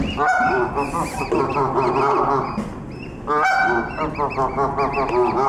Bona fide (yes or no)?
yes